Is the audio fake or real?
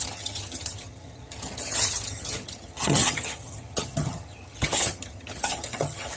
fake